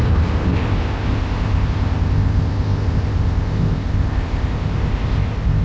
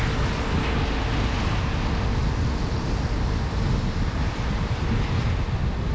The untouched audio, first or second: second